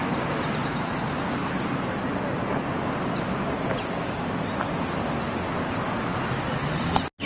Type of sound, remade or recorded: recorded